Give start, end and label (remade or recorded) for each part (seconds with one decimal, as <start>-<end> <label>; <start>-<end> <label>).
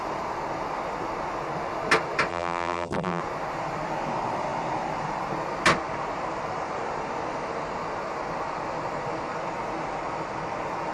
0.0-2.3 recorded; 2.3-3.2 remade; 3.2-10.9 recorded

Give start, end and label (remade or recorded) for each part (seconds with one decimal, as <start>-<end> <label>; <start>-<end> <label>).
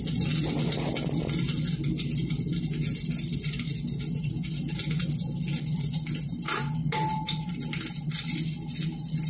0.0-9.3 recorded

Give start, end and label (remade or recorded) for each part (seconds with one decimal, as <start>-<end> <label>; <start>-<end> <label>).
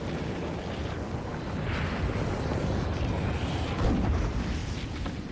0.0-5.3 recorded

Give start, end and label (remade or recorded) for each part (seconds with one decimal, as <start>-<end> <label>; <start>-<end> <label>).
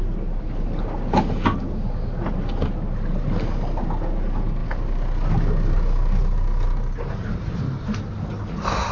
0.0-8.9 recorded